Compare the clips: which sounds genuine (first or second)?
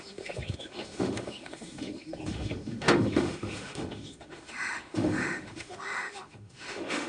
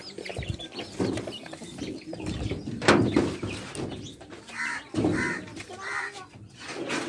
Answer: second